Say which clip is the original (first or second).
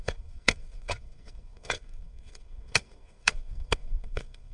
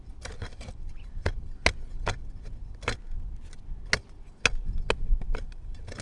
second